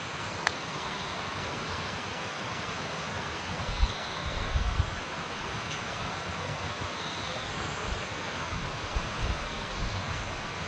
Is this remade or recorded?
remade